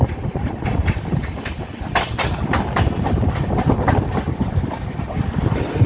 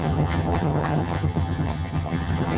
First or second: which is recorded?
first